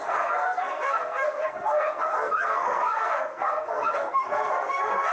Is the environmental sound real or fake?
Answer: fake